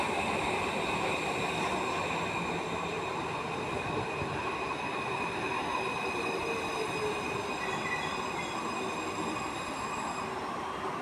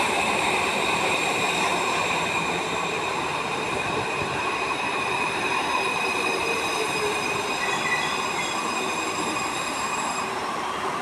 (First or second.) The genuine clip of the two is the first